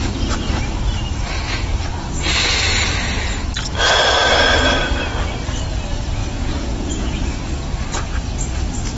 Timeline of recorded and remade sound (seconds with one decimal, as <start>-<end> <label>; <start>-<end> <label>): 0.0-6.2 recorded; 6.2-7.3 remade; 7.3-9.0 recorded